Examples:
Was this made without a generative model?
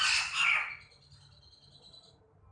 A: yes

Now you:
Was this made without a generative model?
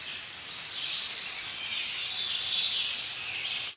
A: yes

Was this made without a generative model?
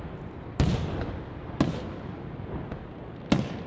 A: yes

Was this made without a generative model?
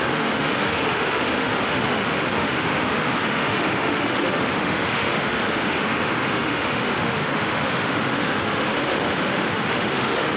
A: no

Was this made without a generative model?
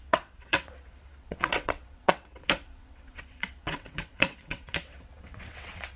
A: no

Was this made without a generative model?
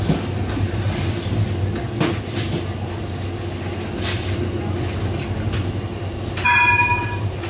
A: yes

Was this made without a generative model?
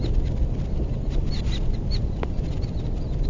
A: yes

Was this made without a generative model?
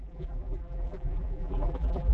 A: no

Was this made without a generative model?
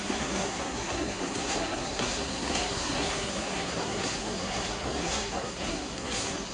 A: no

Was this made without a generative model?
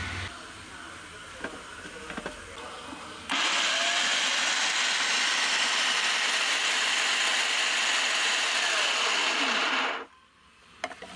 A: yes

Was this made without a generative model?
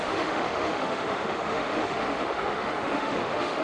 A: no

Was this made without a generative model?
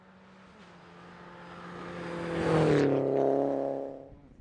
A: yes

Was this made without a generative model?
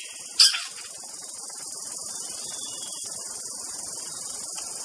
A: yes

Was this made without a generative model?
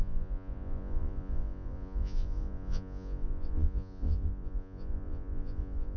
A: no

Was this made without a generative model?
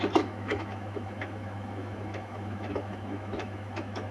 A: no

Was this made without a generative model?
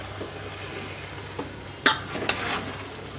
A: yes